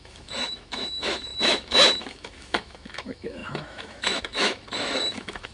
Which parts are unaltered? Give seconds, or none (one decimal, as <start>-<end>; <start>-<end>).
none